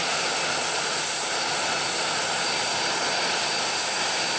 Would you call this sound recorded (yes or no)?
yes